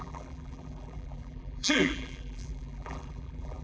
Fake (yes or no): yes